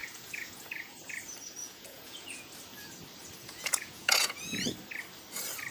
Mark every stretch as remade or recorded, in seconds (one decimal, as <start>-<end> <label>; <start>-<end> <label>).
0.0-1.1 remade; 1.1-1.6 recorded; 1.6-2.5 remade; 2.5-3.4 recorded; 3.4-4.6 remade; 4.6-5.7 recorded